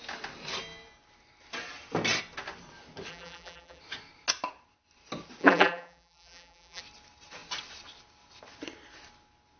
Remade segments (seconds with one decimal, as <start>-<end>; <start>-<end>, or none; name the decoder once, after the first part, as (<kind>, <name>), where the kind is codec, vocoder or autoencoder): 3.1-3.8 (vocoder, BigVGAN v2); 5.4-6.8